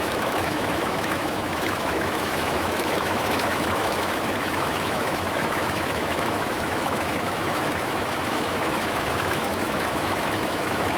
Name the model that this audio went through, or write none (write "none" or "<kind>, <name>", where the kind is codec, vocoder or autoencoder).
autoencoder, DAC-VAE